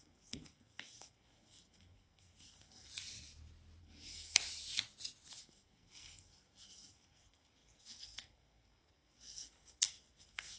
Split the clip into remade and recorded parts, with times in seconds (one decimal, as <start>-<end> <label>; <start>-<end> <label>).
0.0-2.9 remade; 2.9-3.8 recorded; 3.8-4.4 remade; 4.4-5.4 recorded; 5.4-10.6 remade